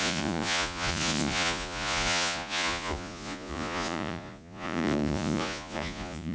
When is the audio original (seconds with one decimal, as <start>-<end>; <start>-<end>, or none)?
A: none